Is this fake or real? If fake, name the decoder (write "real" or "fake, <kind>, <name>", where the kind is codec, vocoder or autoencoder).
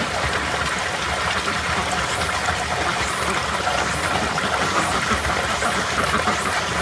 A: real